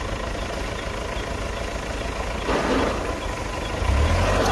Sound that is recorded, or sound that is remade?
recorded